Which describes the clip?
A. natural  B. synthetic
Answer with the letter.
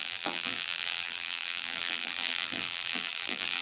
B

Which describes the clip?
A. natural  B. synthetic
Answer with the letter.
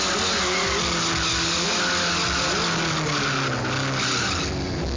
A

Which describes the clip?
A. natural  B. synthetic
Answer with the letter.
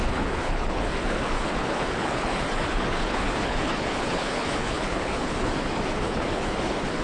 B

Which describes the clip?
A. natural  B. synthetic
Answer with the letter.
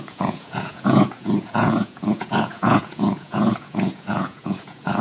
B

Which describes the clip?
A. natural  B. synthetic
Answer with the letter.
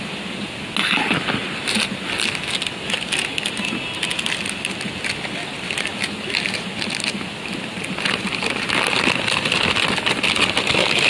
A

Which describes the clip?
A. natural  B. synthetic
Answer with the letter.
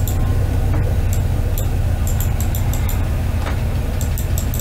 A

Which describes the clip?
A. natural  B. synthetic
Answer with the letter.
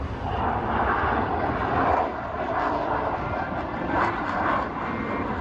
B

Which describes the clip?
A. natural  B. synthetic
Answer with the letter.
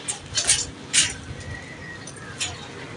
B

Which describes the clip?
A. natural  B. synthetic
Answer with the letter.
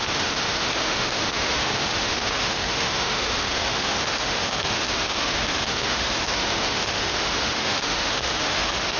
B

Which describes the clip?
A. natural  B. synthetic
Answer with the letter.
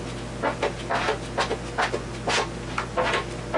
A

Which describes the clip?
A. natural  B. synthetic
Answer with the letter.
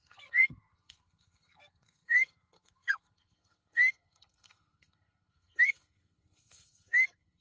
B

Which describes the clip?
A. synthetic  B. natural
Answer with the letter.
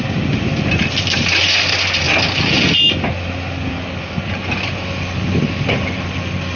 B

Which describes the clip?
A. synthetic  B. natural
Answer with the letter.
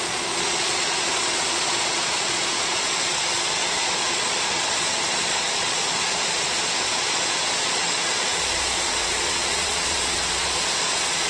A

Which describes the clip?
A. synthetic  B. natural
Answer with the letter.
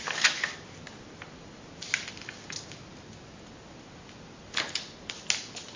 B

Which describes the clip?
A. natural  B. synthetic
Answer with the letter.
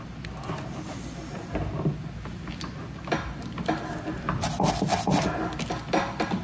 A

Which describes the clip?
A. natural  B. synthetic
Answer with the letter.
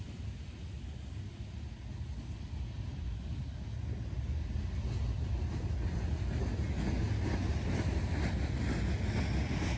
A